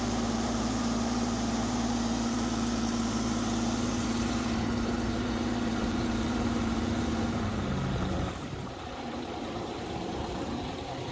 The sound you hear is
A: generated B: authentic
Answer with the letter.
A